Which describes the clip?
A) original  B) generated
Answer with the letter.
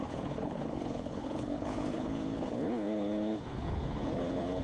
B